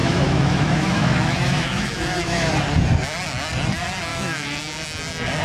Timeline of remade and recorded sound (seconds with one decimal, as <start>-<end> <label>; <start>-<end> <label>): 0.0-2.5 remade; 2.5-4.1 recorded; 4.1-4.6 remade; 4.6-5.4 recorded